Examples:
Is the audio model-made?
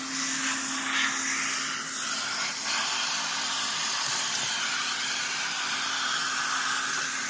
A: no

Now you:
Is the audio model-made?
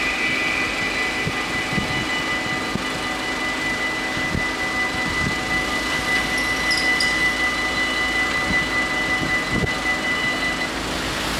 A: no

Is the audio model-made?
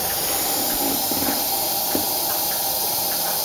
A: no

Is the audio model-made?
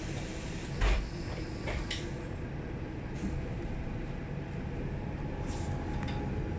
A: no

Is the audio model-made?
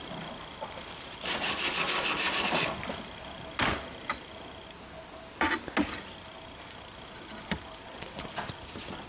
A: no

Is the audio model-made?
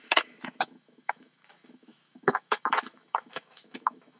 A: yes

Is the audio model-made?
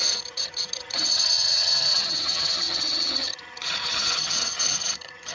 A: yes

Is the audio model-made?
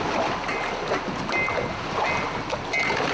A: no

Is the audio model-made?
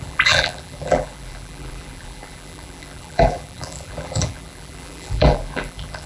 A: yes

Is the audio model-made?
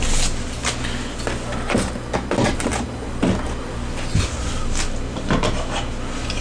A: no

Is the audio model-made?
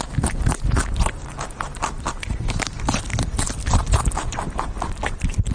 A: no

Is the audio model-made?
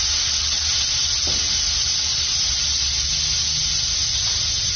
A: no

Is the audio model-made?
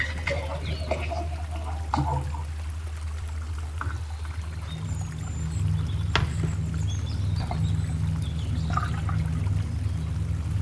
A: no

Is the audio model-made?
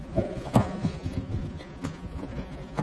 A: yes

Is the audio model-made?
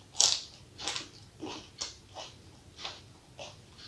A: no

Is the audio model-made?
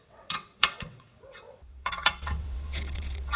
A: yes